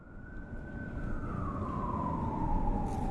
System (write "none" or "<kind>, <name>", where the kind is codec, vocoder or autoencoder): none